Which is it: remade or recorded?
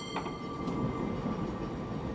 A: recorded